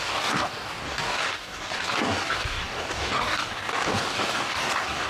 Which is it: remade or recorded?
remade